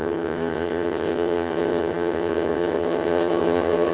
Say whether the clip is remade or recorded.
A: remade